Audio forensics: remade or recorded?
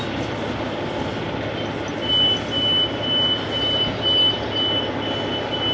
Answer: recorded